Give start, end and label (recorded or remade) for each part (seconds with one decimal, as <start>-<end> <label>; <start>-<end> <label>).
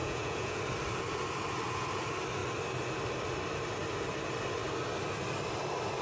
0.0-0.6 remade; 0.6-6.0 recorded